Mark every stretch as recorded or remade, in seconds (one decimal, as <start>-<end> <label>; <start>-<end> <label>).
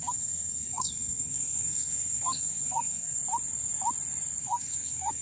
0.0-3.2 remade; 3.2-4.4 recorded; 4.4-5.2 remade